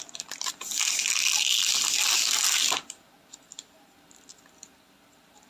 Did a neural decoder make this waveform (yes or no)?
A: no